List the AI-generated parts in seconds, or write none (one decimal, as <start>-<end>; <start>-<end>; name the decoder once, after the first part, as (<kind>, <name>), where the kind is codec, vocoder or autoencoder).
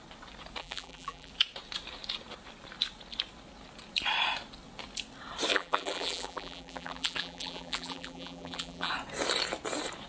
0.6-1.3 (vocoder, BigVGAN v2); 5.5-8.9